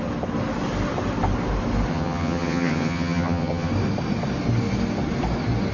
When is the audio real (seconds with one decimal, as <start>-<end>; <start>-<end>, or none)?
0.0-1.9; 3.7-5.7